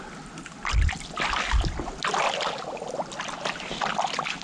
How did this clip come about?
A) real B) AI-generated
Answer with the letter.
A